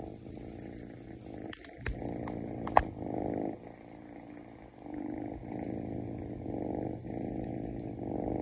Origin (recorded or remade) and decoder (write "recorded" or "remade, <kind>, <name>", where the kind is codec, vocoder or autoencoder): recorded